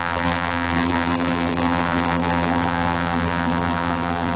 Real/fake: fake